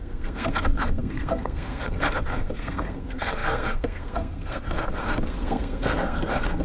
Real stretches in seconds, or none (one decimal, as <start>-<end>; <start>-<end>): none

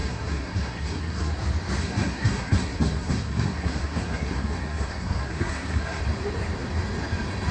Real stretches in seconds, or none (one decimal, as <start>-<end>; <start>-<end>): 1.3-1.8; 6.0-7.5

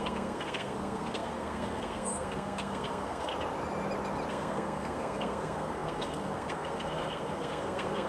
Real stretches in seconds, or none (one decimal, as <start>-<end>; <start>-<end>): 3.3-4.3

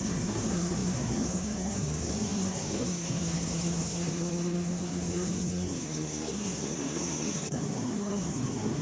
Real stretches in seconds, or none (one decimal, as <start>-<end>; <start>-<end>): none